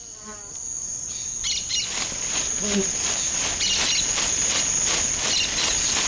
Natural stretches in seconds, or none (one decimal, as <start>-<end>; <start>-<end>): 0.0-6.1